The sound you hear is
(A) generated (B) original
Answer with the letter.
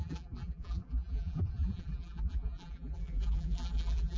A